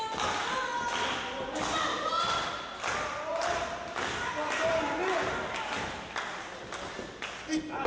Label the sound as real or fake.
real